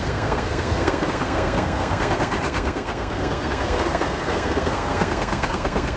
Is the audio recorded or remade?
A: remade